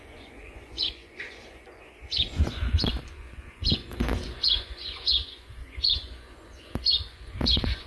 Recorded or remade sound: remade